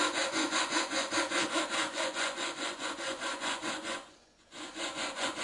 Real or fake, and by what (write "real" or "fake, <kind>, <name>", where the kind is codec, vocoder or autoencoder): fake, vocoder, Vocos